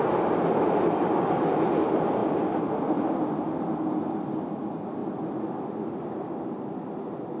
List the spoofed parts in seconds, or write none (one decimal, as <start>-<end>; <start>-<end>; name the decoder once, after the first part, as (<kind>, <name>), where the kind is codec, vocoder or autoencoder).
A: none